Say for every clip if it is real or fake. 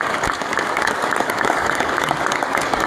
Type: fake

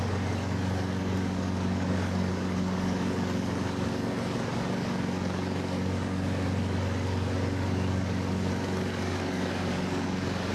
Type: fake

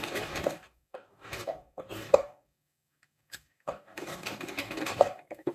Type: fake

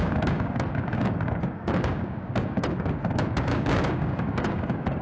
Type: fake